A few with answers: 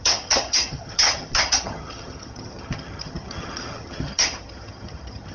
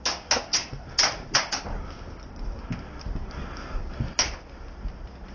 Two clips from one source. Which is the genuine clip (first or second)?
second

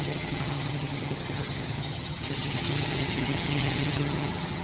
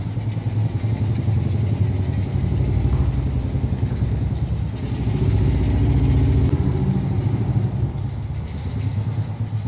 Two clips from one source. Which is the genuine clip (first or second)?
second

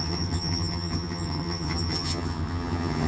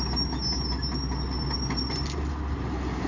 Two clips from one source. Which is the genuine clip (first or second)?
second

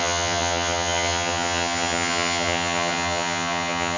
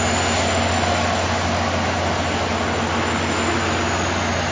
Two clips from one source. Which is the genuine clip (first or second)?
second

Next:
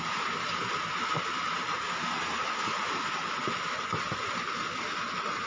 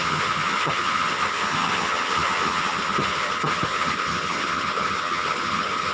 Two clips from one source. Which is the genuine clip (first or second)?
first